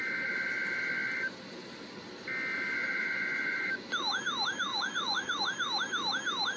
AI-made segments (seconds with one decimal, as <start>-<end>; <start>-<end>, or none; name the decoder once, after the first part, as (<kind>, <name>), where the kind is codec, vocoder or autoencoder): 2.8-3.7 (vocoder, Vocos); 4.7-5.4